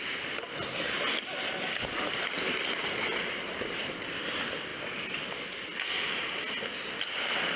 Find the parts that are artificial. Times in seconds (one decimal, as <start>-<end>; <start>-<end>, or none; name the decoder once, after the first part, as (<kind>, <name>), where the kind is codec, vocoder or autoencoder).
none